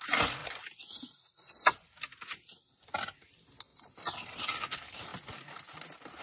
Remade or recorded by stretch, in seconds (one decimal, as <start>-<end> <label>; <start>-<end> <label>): 0.0-0.4 recorded; 0.4-3.3 remade; 3.3-3.7 recorded; 3.7-4.5 remade; 4.5-5.1 recorded; 5.1-6.2 remade

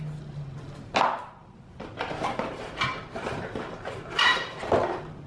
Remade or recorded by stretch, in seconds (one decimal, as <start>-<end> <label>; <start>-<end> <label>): 0.0-1.4 recorded; 1.4-4.6 remade; 4.6-5.3 recorded

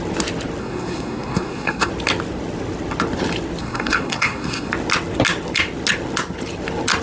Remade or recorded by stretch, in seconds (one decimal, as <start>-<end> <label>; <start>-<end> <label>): 0.0-0.6 recorded; 0.6-1.9 remade; 1.9-3.6 recorded; 3.6-4.7 remade; 4.7-7.0 recorded